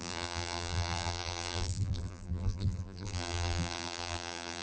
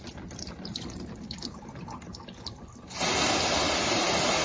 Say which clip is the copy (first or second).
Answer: first